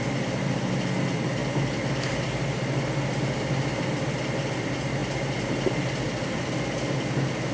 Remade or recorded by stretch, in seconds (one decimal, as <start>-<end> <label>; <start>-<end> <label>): 0.0-7.5 recorded